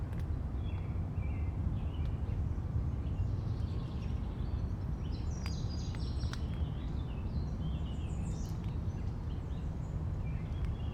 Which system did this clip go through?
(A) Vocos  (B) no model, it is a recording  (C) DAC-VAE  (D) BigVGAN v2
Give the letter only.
B